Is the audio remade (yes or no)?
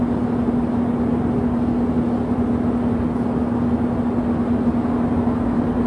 no